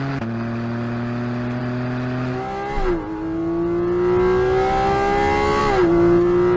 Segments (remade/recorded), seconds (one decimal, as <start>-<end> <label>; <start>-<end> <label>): 0.0-6.6 recorded